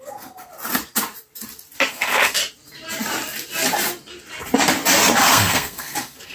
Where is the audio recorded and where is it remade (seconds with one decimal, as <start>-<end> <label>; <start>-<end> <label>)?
0.0-0.5 remade; 0.5-1.9 recorded; 1.9-2.4 remade; 2.4-5.2 recorded; 5.2-6.3 remade